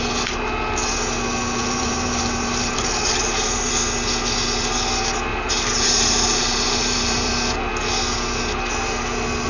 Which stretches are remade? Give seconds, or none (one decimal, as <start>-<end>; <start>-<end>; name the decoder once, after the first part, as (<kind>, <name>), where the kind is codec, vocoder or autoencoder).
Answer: 1.6-3.7 (vocoder, BigVGAN v2); 5.3-7.3